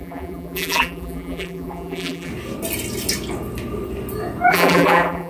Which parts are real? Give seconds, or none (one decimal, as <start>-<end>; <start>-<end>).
2.3-4.5